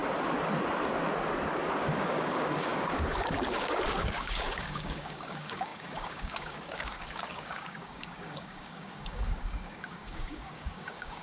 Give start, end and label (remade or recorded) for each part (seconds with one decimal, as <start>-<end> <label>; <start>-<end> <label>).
0.0-1.8 recorded; 1.8-11.2 remade